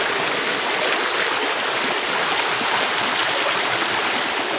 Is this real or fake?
real